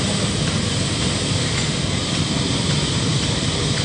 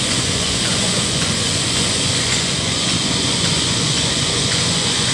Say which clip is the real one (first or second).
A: first